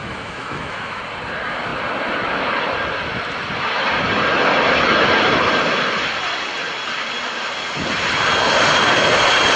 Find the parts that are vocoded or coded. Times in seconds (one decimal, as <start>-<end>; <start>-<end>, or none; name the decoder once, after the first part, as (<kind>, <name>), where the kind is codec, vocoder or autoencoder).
0.0-1.0 (autoencoder, DAC-VAE)